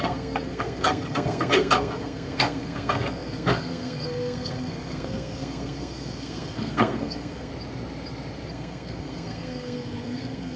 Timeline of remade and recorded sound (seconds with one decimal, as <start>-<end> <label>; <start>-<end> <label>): 0.0-7.5 remade; 7.5-8.5 recorded; 8.5-10.6 remade